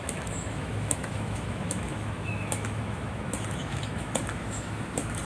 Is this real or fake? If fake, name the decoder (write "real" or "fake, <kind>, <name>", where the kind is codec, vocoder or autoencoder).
fake, autoencoder, DAC-VAE